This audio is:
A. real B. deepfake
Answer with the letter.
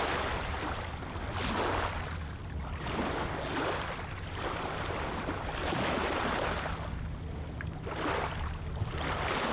A